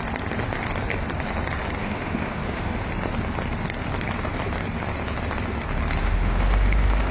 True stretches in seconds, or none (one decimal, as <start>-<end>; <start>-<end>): 0.0-1.8; 2.9-6.0